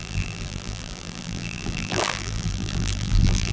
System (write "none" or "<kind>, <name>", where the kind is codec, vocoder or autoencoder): vocoder, BigVGAN v2